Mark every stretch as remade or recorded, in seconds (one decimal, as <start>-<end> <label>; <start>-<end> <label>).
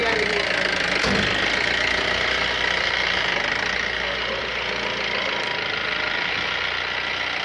0.0-7.4 recorded